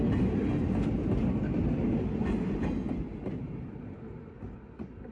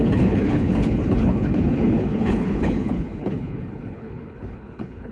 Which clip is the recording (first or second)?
first